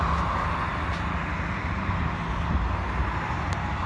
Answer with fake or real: real